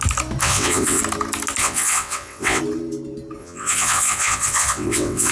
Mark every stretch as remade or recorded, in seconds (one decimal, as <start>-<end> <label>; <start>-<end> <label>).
0.0-0.4 recorded; 0.4-1.0 remade; 1.0-1.6 recorded; 1.6-2.6 remade; 2.6-3.4 recorded; 3.4-5.3 remade